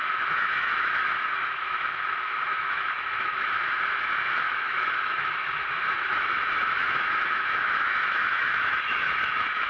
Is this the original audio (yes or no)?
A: no